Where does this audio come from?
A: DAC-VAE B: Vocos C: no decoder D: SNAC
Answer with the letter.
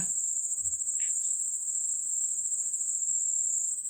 A